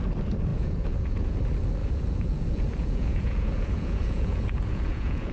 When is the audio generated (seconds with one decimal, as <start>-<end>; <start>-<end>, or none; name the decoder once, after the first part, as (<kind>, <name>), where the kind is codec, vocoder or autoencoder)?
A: 0.5-1.4 (vocoder, Vocos); 1.8-5.3